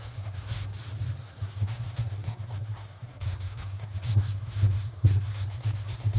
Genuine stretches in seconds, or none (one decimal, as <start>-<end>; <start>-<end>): 0.7-1.2